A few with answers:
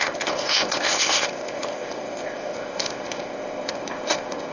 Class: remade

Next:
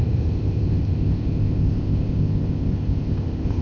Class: remade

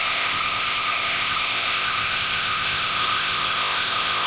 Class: remade